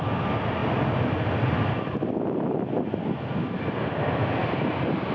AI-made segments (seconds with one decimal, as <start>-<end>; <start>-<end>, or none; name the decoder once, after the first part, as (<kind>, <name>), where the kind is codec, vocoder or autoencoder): none